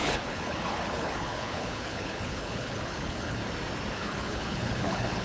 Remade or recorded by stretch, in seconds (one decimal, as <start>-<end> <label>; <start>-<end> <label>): 0.0-3.4 remade; 3.4-3.9 recorded; 3.9-5.2 remade